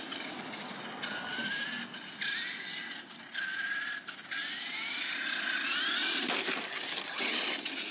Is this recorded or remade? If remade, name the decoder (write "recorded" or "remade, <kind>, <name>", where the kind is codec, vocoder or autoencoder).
recorded